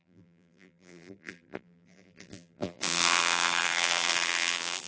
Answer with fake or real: fake